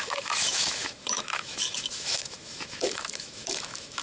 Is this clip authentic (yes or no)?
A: no